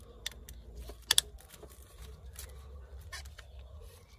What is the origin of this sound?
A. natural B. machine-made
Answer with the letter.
A